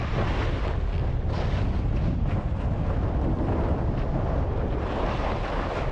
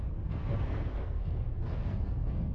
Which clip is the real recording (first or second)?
first